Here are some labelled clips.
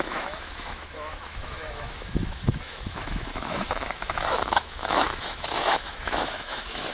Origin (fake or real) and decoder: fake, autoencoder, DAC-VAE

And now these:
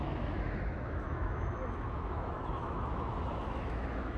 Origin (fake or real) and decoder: fake, autoencoder, DAC-VAE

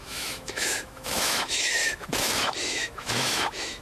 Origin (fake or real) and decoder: fake, autoencoder, DAC-VAE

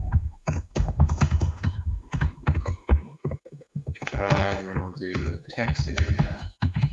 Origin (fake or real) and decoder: fake, autoencoder, DAC-VAE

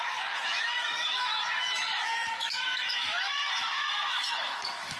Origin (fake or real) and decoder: fake, autoencoder, DAC-VAE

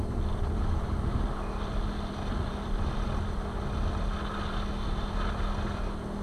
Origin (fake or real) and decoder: real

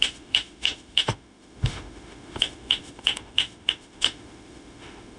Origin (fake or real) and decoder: fake, autoencoder, DAC-VAE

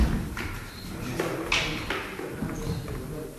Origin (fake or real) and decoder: real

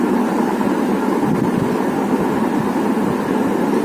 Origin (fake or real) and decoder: real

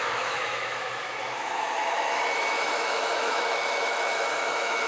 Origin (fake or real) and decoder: fake, autoencoder, DAC-VAE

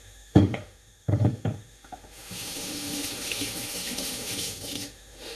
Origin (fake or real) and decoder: fake, autoencoder, DAC-VAE